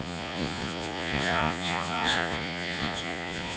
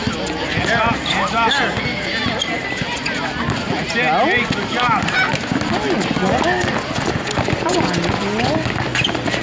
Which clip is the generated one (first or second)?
first